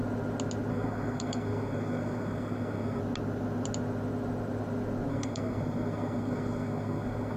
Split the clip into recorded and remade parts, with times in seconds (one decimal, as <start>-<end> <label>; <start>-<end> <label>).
0.0-0.7 recorded; 0.7-3.0 remade; 3.0-5.1 recorded; 5.1-7.4 remade